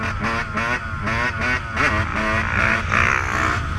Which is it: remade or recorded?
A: recorded